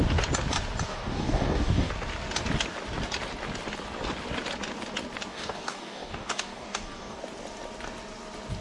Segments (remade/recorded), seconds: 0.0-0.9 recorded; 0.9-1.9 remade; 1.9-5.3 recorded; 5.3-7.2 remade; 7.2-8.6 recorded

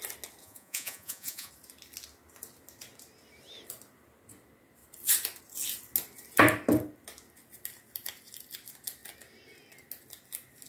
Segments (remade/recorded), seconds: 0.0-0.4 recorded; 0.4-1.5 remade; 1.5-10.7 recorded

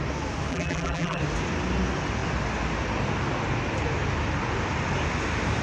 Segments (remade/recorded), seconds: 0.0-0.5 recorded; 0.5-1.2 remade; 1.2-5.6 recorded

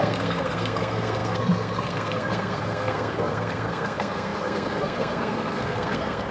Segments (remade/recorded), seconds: 0.0-6.3 remade

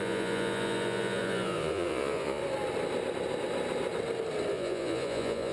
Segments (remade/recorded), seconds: 0.0-2.4 remade; 2.4-4.5 recorded; 4.5-5.5 remade

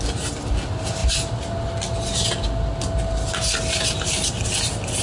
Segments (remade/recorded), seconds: 0.0-5.0 recorded

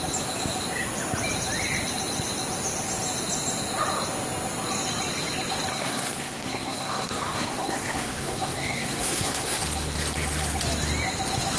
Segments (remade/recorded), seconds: 0.0-5.7 recorded; 5.7-9.6 remade; 9.6-11.6 recorded